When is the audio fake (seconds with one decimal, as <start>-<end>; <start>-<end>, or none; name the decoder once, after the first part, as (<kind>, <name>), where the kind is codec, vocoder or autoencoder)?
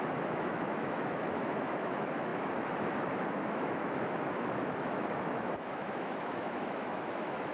0.0-7.5 (autoencoder, DAC-VAE)